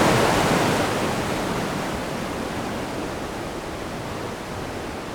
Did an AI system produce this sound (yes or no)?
no